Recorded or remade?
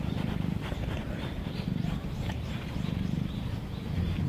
remade